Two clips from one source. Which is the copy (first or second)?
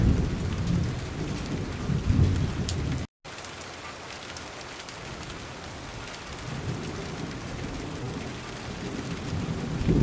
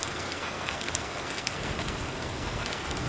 second